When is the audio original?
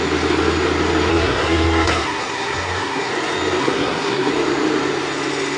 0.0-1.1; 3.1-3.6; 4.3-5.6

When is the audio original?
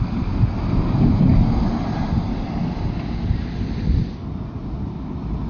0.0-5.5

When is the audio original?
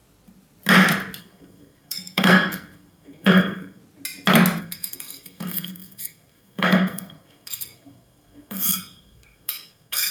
0.0-1.2; 3.8-4.6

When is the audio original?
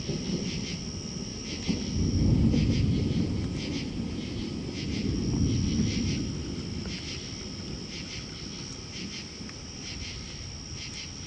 0.0-11.3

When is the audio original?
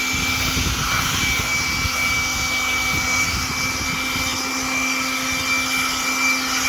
0.0-6.7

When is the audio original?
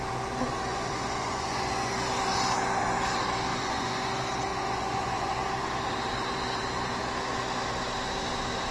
0.0-0.7; 1.9-3.5; 4.1-4.5; 5.3-8.7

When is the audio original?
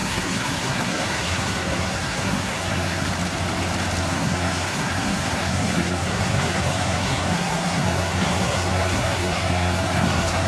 3.1-4.0